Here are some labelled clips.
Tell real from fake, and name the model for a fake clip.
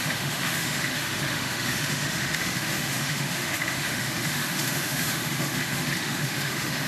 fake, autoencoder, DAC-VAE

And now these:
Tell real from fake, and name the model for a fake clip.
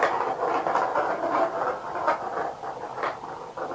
real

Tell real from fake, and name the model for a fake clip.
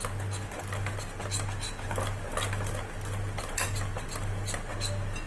real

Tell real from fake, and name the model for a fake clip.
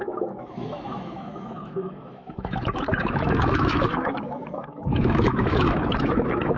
fake, autoencoder, DAC-VAE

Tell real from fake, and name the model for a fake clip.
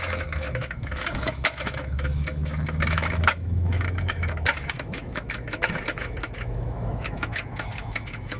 fake, autoencoder, DAC-VAE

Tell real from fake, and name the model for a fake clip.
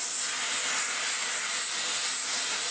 real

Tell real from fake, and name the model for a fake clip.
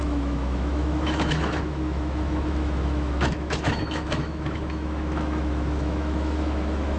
fake, autoencoder, DAC-VAE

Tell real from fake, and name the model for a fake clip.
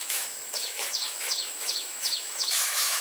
fake, autoencoder, DAC-VAE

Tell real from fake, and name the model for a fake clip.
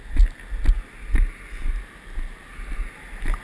real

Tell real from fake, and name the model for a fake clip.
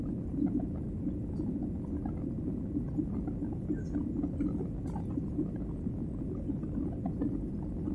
real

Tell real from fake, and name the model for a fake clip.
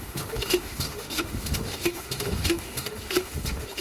fake, autoencoder, DAC-VAE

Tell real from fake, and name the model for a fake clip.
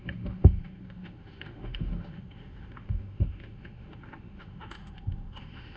fake, autoencoder, DAC-VAE